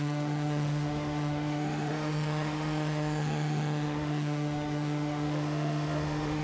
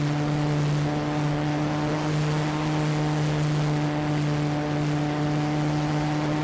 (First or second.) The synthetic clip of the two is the first